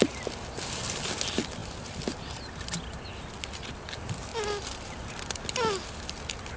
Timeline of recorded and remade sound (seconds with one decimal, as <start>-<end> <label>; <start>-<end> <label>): 0.0-6.6 recorded